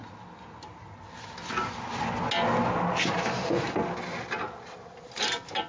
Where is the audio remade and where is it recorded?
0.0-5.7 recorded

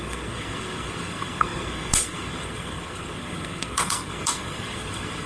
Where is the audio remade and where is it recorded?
0.0-5.3 remade